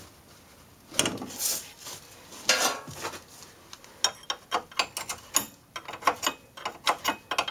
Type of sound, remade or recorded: recorded